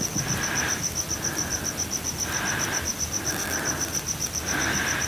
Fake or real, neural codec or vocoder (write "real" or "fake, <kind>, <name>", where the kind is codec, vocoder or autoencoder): real